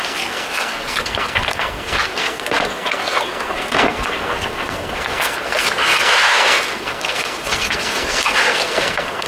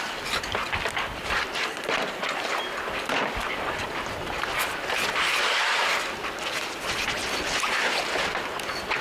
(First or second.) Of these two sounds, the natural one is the second